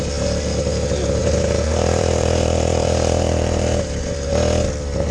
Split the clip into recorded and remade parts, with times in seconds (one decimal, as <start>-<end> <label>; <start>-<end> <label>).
0.0-1.2 recorded; 1.2-4.3 remade; 4.3-5.1 recorded